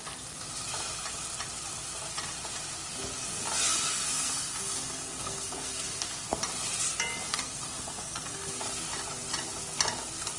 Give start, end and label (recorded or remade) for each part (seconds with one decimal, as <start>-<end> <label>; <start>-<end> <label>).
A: 0.0-3.7 recorded; 3.7-6.4 remade; 6.4-7.3 recorded; 7.3-8.6 remade; 8.6-10.4 recorded